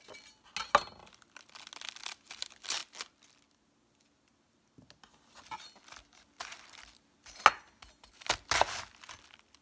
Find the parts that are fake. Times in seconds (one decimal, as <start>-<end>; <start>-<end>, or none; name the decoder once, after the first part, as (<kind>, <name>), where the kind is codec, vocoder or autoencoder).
none